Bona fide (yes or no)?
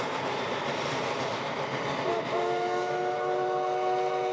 yes